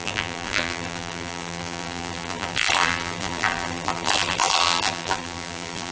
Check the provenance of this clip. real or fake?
fake